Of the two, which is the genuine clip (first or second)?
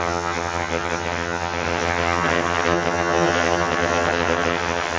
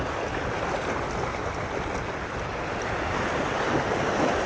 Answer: second